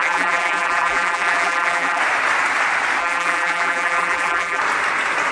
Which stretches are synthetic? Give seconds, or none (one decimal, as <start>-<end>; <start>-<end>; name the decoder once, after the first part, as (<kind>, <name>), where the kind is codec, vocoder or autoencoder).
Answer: 0.0-2.0 (vocoder, BigVGAN v2); 3.0-4.6